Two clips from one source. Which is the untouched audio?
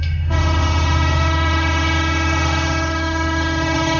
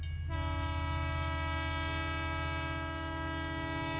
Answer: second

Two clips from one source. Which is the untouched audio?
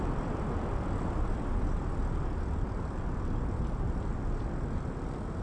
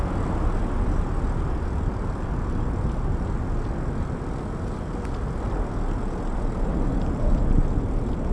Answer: second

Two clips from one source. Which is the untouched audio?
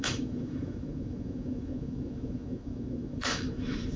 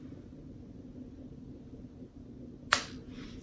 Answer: second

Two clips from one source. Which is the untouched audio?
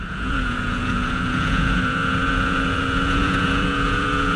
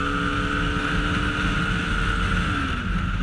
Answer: second